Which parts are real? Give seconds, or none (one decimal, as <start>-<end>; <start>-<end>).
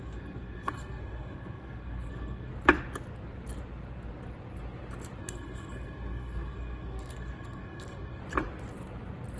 2.5-5.2; 8.2-9.4